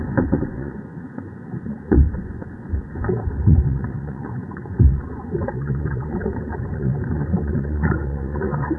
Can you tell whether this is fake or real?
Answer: fake